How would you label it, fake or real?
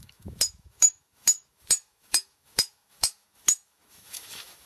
fake